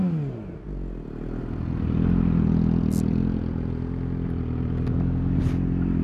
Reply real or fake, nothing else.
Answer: real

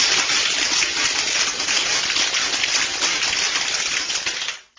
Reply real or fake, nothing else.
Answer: real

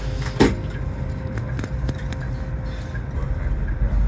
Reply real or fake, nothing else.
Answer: real